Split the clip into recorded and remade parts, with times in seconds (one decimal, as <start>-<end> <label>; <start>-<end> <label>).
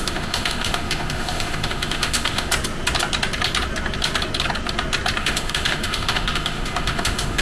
0.0-2.5 remade; 2.5-5.2 recorded; 5.2-7.4 remade